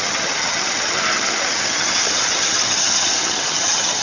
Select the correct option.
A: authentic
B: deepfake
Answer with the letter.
B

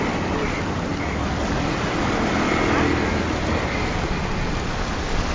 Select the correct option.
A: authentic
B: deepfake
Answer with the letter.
A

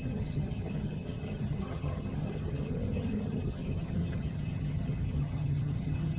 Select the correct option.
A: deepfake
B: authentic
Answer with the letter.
A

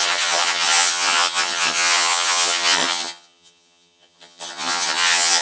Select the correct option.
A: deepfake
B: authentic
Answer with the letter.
A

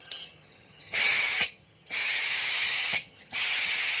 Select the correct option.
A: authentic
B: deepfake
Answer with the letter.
B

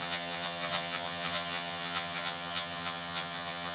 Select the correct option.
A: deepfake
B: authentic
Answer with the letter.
A